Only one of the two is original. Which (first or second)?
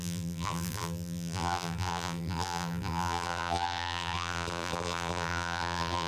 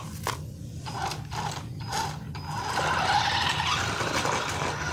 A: second